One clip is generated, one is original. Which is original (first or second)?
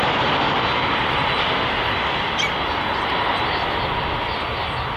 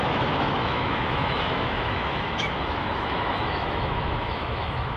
first